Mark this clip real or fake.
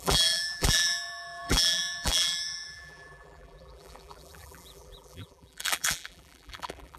fake